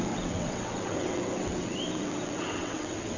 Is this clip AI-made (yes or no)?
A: yes